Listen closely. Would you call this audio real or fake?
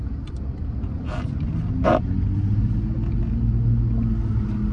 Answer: real